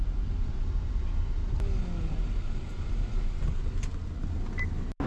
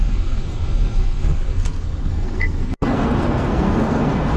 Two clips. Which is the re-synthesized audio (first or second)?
second